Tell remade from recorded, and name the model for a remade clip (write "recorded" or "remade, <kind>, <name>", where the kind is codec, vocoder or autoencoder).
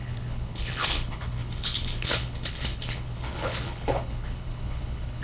remade, codec, HILCodec